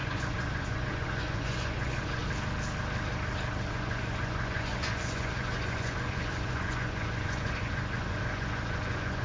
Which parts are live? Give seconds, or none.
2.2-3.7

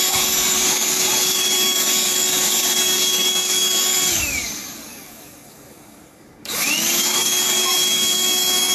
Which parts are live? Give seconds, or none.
none

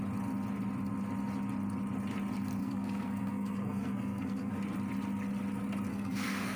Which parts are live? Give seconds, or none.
0.0-2.6; 4.5-5.9

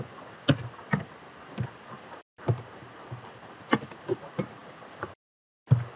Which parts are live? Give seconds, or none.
0.0-4.6; 5.4-6.0